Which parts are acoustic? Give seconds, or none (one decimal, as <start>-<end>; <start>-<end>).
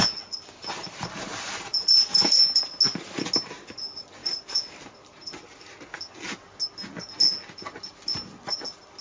0.0-1.7; 2.2-4.2; 5.9-9.0